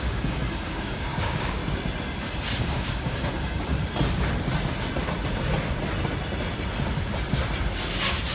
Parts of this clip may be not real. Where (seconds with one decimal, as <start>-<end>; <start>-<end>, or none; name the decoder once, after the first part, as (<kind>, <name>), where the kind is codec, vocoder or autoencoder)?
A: 0.0-1.6 (codec, DAC); 2.6-3.8